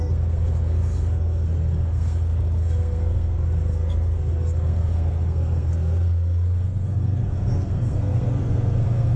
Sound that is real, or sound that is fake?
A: fake